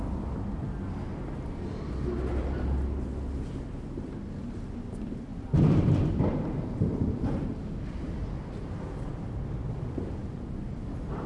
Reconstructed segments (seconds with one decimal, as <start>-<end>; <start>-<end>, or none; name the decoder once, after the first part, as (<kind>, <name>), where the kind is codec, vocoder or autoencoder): 5.3-5.9 (vocoder, BigVGAN v2)